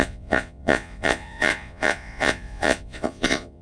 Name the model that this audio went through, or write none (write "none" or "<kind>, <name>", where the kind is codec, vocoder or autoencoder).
vocoder, Vocos